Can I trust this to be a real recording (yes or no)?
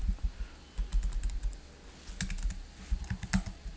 yes